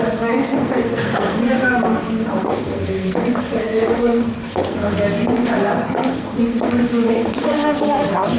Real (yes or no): no